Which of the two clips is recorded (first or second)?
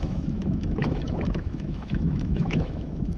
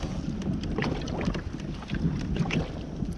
second